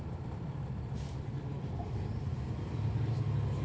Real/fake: real